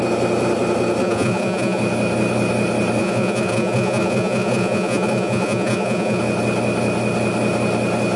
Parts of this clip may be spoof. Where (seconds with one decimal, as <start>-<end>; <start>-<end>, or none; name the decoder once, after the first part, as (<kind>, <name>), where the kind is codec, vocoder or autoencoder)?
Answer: 1.0-1.8 (vocoder, Vocos); 3.0-6.2